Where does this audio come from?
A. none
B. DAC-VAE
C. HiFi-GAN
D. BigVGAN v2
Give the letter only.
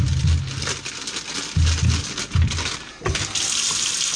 A